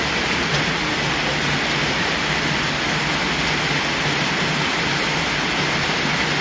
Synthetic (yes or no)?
no